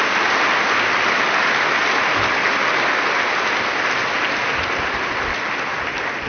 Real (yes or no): yes